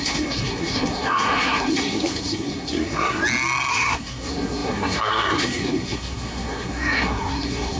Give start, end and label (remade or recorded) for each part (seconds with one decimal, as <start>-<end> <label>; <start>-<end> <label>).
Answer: 0.0-3.2 remade; 3.2-3.7 recorded; 3.7-7.8 remade